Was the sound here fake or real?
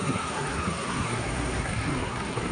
fake